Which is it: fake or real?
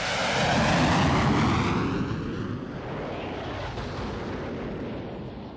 real